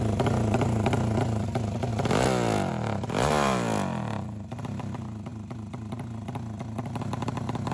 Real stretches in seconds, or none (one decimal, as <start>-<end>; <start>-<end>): 0.0-7.7